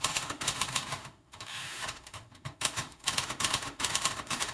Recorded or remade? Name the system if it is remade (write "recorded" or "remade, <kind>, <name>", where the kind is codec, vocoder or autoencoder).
remade, autoencoder, DAC-VAE